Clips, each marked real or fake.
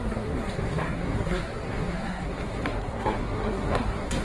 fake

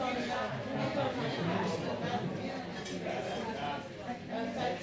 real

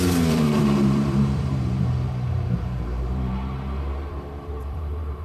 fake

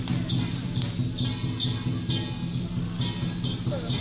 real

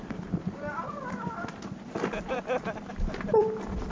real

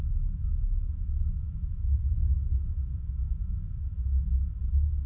fake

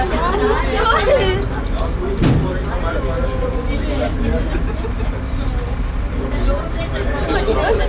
real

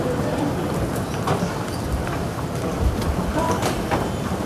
real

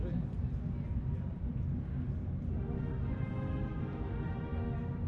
real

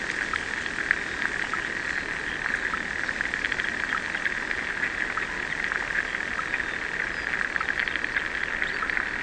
real